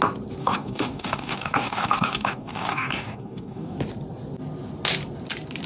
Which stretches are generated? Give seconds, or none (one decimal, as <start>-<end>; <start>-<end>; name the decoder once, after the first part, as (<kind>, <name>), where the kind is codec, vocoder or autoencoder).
0.4-3.8 (codec, DAC)